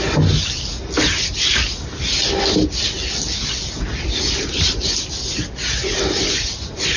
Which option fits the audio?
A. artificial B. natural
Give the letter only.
B